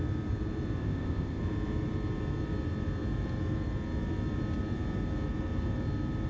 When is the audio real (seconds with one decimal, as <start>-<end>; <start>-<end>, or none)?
0.0-0.8; 1.4-6.3